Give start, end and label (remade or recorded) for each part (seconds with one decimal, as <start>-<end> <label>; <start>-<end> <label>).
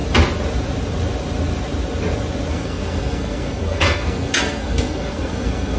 0.0-2.5 recorded; 2.5-5.8 remade